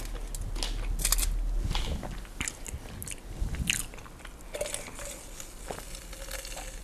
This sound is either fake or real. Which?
real